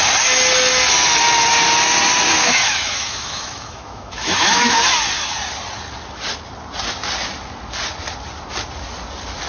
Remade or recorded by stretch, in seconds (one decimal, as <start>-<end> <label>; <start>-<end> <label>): 0.0-2.3 recorded; 2.3-4.9 remade; 4.9-9.5 recorded